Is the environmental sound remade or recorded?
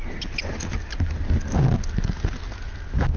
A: recorded